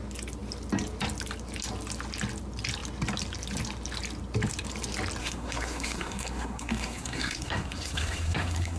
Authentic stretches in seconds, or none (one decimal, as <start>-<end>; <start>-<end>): 0.0-5.2